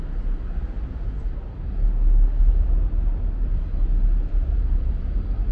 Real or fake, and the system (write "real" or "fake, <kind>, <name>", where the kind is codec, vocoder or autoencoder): real